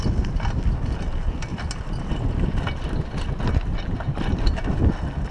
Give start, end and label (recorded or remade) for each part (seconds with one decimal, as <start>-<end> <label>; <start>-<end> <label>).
0.0-5.3 recorded